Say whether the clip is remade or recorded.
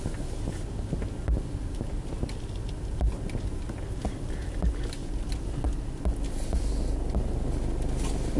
recorded